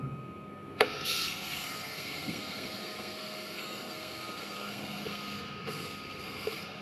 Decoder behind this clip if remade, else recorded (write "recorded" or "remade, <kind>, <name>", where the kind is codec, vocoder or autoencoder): remade, codec, SNAC